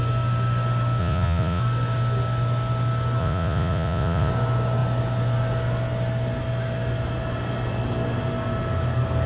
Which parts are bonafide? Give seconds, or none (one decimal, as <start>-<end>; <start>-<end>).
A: 0.0-1.0; 1.6-3.2; 4.3-9.3